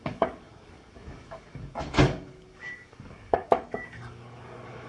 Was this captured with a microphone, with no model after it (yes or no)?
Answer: no